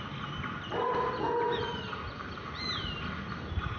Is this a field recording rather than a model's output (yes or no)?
yes